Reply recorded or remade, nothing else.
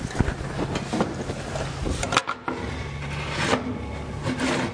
recorded